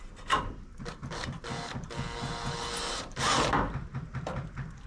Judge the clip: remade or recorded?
recorded